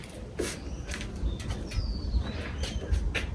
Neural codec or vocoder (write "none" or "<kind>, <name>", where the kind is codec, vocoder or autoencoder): none